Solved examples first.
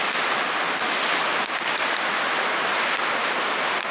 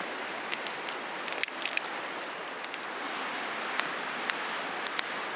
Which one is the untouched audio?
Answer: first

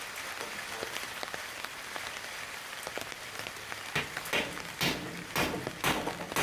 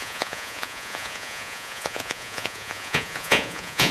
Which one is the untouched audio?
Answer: first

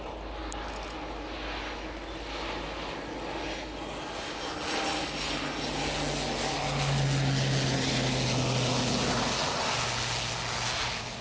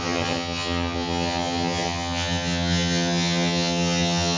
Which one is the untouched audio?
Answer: first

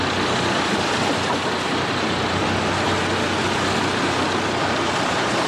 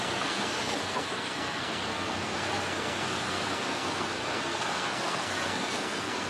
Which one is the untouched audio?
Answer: first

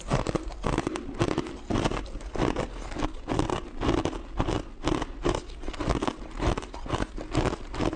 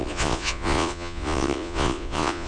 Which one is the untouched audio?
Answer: first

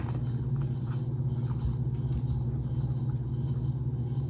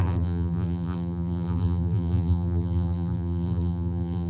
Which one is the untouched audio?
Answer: first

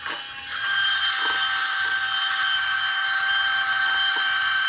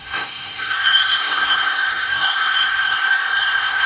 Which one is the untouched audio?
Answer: first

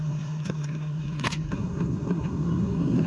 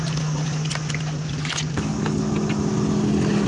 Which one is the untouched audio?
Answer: second